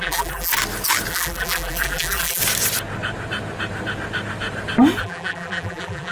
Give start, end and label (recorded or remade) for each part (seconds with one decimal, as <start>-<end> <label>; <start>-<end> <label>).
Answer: 0.0-0.5 remade; 0.5-1.1 recorded; 1.1-2.4 remade; 2.4-5.0 recorded; 5.0-6.1 remade